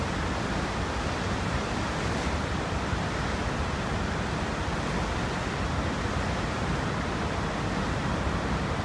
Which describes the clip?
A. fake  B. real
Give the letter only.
B